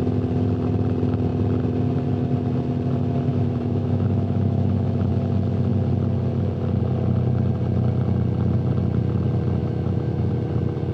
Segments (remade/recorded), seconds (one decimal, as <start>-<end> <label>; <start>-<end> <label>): 0.0-3.3 recorded; 3.3-5.1 remade; 5.1-9.6 recorded; 9.6-10.3 remade; 10.3-10.9 recorded